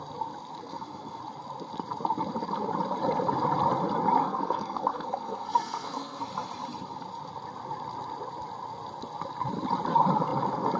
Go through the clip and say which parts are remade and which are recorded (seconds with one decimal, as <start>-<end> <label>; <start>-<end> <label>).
0.0-0.6 recorded; 0.6-1.2 remade; 1.2-4.2 recorded; 4.2-6.2 remade; 6.2-10.8 recorded